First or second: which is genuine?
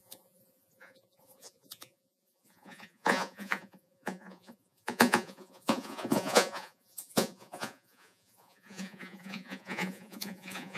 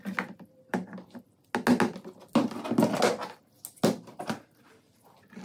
second